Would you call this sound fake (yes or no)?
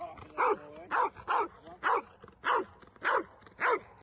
no